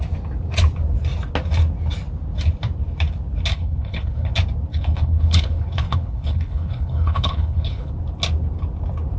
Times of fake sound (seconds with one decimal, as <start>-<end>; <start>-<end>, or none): 3.5-4.3; 4.7-7.9